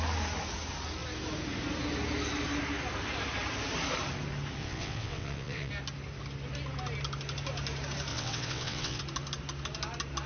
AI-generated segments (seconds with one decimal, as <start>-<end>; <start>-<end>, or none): 4.6-5.7; 8.1-9.0